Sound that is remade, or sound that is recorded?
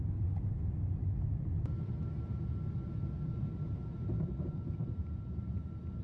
recorded